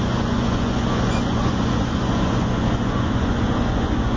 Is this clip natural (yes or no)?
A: no